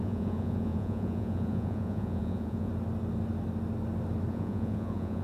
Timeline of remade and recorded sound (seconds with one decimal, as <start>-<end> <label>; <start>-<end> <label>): 0.0-2.7 remade; 2.7-4.3 recorded; 4.3-5.2 remade